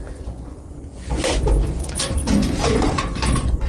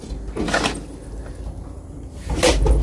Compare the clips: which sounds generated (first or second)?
first